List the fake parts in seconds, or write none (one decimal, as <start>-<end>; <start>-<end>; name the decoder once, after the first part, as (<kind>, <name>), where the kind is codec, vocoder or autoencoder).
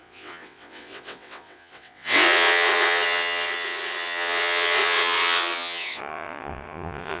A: 0.0-7.2 (vocoder, WaveNeXt)